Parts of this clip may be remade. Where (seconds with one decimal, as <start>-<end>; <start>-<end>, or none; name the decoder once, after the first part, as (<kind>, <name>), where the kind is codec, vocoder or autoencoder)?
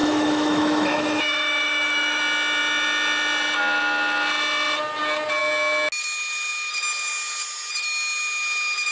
0.0-2.2 (autoencoder, DAC-VAE)